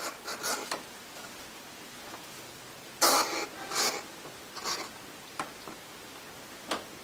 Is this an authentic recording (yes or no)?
yes